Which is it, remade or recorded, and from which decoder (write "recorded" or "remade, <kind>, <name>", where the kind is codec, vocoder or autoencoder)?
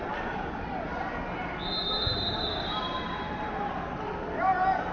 recorded